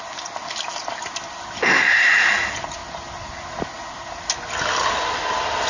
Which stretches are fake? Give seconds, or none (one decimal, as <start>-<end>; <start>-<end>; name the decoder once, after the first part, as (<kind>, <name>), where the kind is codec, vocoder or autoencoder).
none